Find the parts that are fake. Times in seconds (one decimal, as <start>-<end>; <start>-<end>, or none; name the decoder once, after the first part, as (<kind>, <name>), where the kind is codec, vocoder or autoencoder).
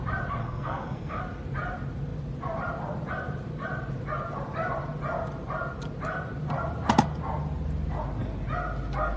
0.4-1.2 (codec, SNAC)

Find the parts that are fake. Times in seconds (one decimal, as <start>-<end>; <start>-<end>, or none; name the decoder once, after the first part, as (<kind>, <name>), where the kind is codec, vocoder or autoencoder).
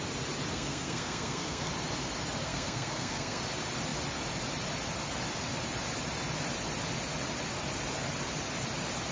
0.5-1.7 (codec, SNAC); 2.4-3.4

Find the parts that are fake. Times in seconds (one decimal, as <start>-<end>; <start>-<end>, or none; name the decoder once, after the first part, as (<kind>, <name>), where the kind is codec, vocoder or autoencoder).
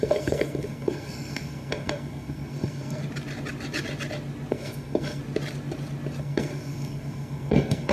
0.0-3.0 (codec, SNAC); 4.5-5.2; 6.2-7.9